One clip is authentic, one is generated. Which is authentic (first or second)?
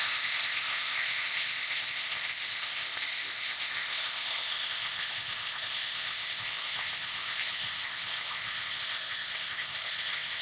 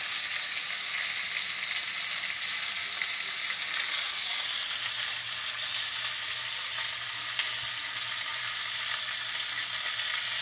second